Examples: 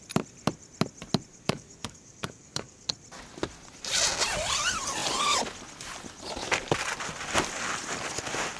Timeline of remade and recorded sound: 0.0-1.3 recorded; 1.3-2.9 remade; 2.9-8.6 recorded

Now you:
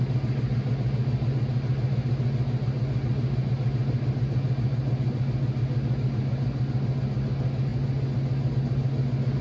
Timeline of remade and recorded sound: 0.0-9.4 recorded